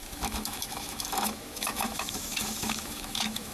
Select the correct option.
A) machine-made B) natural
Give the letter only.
A